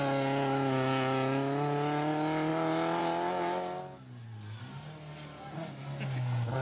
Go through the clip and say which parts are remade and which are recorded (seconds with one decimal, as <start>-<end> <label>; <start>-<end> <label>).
0.0-6.6 recorded